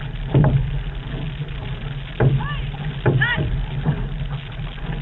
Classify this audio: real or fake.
real